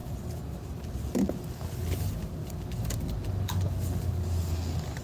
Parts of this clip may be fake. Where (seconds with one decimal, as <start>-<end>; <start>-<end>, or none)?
0.0-1.3; 2.4-4.0